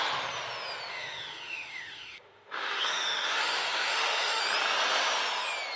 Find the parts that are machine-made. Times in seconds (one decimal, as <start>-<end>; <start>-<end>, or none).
0.9-4.4